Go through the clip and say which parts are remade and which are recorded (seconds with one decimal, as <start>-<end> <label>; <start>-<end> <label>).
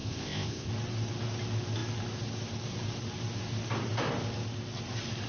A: 0.0-0.7 remade; 0.7-5.3 recorded